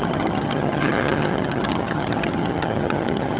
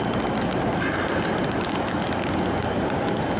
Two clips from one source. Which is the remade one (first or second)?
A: first